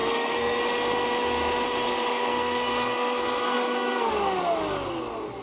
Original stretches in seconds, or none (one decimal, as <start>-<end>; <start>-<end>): 0.6-2.1; 4.1-5.4